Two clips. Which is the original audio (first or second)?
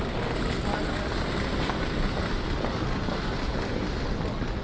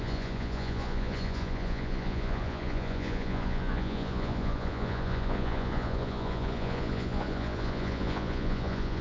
first